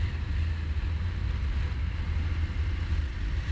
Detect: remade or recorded recorded